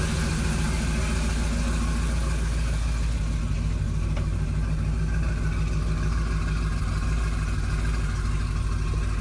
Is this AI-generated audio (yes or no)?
no